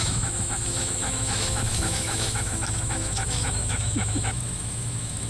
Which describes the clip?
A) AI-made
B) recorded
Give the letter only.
A